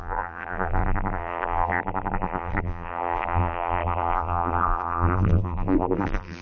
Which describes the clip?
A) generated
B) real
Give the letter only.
A